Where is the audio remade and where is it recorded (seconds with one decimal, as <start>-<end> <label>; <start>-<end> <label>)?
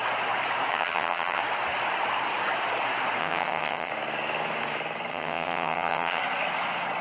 0.0-0.7 recorded; 0.7-1.4 remade; 1.4-3.2 recorded; 3.2-3.9 remade; 3.9-5.1 recorded; 5.1-6.2 remade; 6.2-7.0 recorded